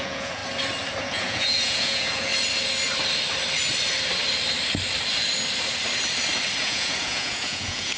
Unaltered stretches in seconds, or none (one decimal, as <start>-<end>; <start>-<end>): 0.4-1.0; 2.3-6.6